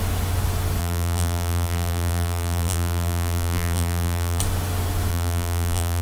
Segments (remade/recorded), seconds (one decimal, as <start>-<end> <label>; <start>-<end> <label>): 0.0-0.8 recorded; 0.8-4.4 remade; 4.4-5.1 recorded; 5.1-6.0 remade